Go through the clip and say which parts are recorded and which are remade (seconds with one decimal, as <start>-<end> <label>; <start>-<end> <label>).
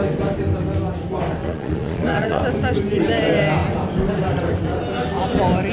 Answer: 0.0-1.4 recorded; 1.4-2.4 remade; 2.4-5.7 recorded